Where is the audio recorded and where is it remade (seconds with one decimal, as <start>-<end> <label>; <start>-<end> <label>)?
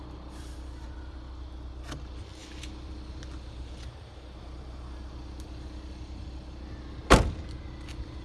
0.0-8.2 recorded